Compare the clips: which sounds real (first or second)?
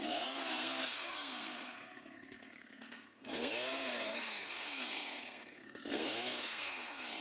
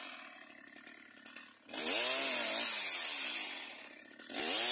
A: second